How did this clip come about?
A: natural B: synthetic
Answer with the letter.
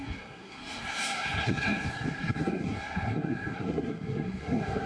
B